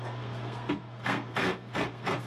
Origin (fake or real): fake